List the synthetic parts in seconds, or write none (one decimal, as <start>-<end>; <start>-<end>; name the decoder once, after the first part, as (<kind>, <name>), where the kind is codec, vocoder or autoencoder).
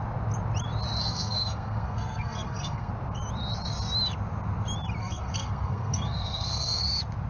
1.0-2.9 (codec, SNAC); 5.0-6.8